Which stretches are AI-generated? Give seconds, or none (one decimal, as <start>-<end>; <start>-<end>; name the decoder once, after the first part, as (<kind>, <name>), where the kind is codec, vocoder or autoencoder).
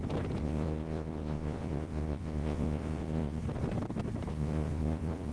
0.4-3.4 (vocoder, Vocos); 4.3-5.3